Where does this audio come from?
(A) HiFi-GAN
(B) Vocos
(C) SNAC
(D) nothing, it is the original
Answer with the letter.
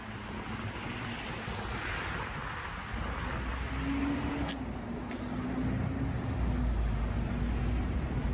D